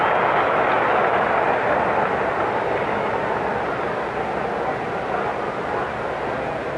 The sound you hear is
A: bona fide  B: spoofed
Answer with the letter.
A